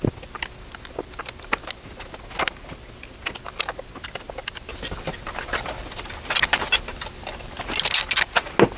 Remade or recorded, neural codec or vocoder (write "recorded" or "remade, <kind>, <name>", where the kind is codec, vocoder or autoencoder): recorded